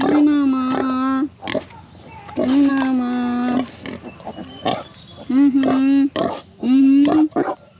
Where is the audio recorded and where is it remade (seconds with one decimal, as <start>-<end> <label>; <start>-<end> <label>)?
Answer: 0.0-7.8 recorded